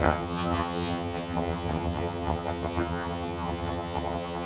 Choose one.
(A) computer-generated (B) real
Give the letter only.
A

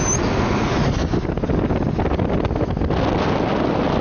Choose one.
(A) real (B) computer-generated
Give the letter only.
A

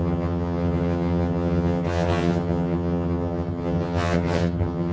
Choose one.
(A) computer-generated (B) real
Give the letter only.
A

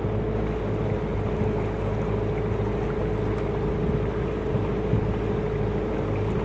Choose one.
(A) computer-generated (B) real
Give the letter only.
B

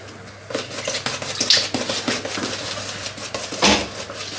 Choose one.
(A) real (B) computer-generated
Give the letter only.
A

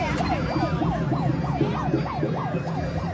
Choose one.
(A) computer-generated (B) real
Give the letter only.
B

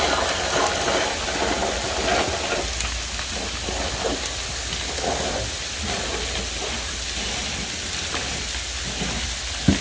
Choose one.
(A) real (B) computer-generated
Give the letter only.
A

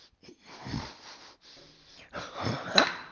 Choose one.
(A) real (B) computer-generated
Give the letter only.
A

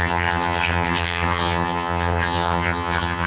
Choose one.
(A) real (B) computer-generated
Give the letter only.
B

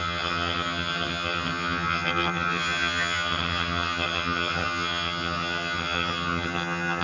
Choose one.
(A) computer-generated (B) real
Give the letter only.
A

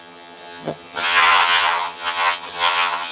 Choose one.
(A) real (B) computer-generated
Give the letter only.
B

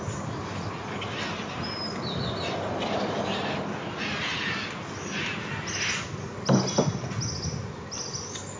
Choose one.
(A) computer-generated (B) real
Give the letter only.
B